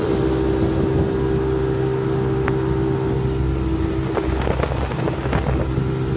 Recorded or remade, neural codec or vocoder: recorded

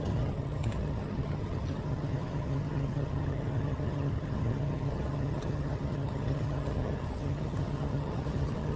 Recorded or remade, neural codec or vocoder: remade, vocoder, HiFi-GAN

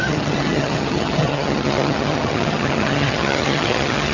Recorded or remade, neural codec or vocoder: remade, vocoder, HiFi-GAN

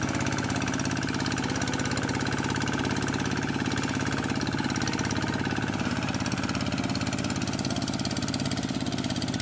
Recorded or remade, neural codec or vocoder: recorded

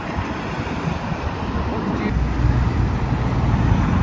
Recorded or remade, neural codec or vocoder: recorded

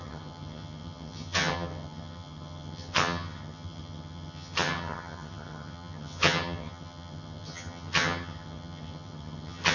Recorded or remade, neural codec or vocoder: remade, vocoder, HiFi-GAN